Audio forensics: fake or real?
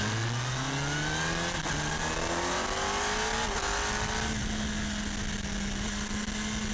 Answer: real